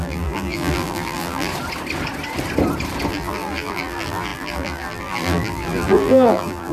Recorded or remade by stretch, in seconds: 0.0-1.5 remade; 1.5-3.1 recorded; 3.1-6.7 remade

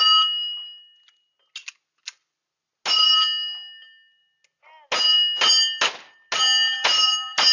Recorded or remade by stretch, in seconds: 0.0-7.5 recorded

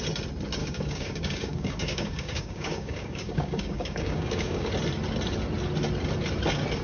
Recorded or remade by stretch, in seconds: 0.0-0.6 recorded; 0.6-4.7 remade; 4.7-6.8 recorded

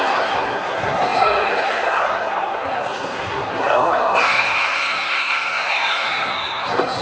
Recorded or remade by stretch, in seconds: 0.0-7.0 remade